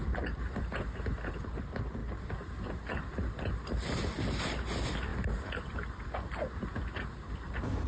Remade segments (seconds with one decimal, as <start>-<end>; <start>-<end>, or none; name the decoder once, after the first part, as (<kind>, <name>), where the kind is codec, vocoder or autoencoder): none